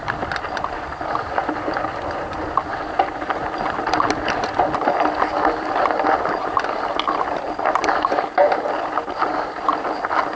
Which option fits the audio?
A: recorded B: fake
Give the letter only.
A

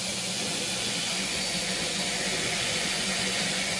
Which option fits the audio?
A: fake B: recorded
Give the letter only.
A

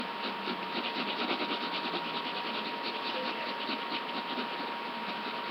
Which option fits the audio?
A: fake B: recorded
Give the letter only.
B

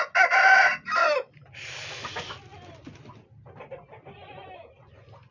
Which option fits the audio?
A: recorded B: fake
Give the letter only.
A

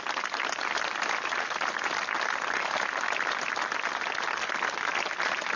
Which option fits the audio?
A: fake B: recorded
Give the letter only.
B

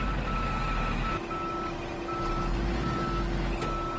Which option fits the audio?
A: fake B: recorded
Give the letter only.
B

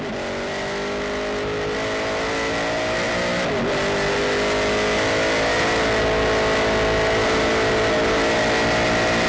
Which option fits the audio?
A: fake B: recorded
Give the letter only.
B